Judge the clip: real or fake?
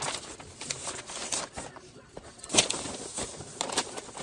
real